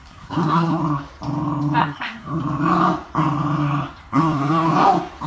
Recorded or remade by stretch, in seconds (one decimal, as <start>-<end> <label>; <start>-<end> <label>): 0.0-0.8 remade; 0.8-1.8 recorded; 1.8-2.4 remade; 2.4-4.1 recorded; 4.1-4.7 remade; 4.7-5.3 recorded